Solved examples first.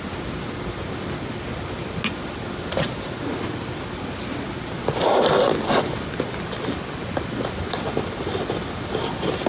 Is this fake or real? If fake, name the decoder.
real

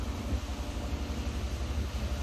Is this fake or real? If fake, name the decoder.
real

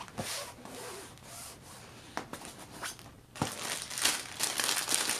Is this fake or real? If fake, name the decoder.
real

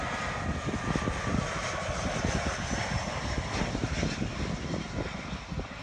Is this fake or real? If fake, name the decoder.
real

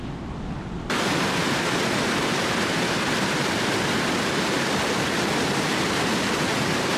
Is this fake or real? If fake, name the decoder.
real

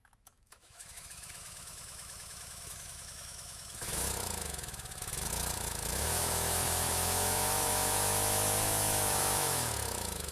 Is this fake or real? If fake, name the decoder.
fake, autoencoder, DAC-VAE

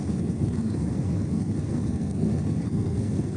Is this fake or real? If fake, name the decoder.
fake, codec, SNAC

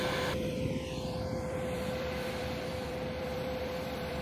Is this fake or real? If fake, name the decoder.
fake, vocoder, BigVGAN v2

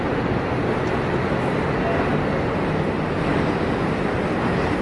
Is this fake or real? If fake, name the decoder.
real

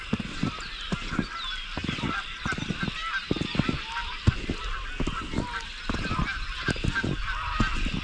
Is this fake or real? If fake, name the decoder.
real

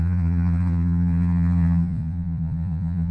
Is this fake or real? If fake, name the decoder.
fake, vocoder, Vocos